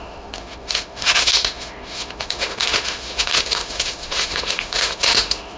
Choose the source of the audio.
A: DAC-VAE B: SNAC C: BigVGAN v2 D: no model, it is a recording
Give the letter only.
A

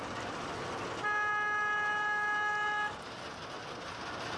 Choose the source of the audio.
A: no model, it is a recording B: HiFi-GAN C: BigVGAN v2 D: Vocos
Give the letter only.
A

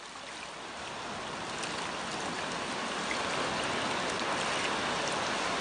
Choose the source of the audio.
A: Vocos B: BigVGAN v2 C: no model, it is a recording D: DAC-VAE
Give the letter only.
C